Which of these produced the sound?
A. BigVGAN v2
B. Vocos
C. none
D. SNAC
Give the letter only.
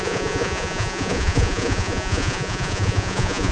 B